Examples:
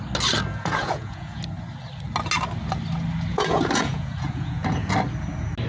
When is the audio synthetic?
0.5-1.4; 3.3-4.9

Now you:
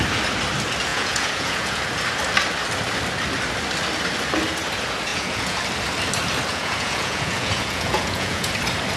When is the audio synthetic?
0.9-1.8; 5.1-5.6; 6.5-8.5